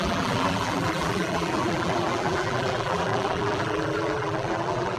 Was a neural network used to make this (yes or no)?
yes